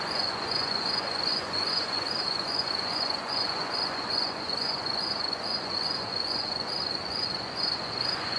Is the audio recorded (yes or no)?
no